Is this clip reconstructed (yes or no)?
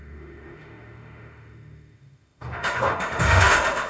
yes